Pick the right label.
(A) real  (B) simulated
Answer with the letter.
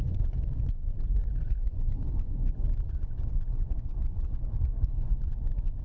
B